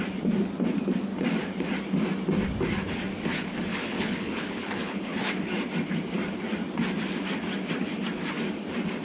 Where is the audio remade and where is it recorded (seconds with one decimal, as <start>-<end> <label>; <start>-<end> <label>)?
0.0-3.7 recorded; 3.7-5.3 remade; 5.3-9.0 recorded

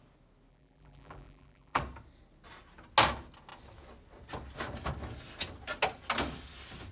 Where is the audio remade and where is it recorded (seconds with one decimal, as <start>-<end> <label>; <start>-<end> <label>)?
0.0-0.5 recorded; 0.5-1.8 remade; 1.8-6.9 recorded

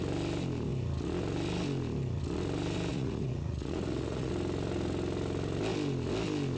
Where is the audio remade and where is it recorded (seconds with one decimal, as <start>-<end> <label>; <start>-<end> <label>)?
0.0-2.9 recorded; 2.9-4.3 remade; 4.3-6.6 recorded

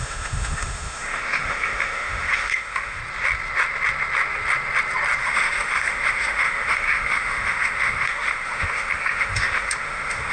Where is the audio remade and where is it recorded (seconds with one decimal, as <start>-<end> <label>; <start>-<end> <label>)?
0.0-3.0 remade; 3.0-5.2 recorded; 5.2-10.3 remade

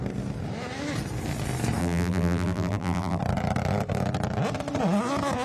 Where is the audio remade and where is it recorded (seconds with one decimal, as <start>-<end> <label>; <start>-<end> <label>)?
0.0-1.8 recorded; 1.8-3.2 remade; 3.2-5.4 recorded

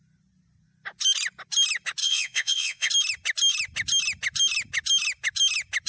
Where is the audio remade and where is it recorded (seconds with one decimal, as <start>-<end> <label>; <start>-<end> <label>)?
0.0-2.0 recorded; 2.0-2.9 remade; 2.9-5.9 recorded